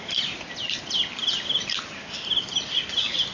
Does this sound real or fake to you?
real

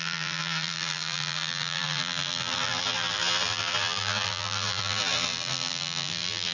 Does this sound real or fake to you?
fake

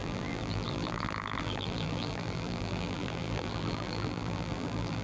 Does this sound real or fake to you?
fake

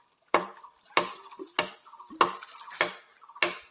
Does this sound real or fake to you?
real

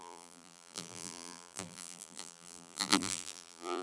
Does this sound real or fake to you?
fake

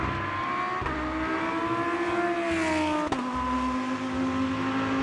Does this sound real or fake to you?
real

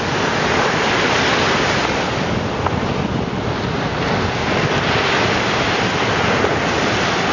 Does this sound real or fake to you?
real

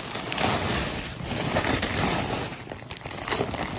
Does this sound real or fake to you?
fake